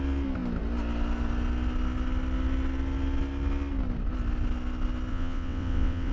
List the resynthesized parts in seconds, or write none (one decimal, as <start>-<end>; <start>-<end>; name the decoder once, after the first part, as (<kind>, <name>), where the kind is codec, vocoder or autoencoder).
5.1-6.1 (vocoder, WaveNeXt)